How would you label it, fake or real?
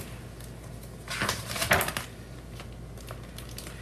real